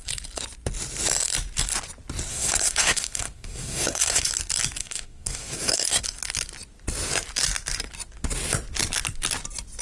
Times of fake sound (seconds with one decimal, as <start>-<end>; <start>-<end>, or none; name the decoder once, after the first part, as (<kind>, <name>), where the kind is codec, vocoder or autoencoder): 2.3-4.3 (codec, SNAC); 4.8-6.0